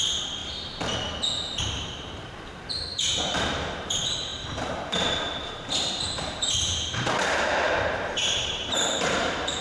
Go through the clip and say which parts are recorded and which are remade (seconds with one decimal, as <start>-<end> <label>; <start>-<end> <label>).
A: 0.0-0.4 remade; 0.4-1.6 recorded; 1.6-9.6 remade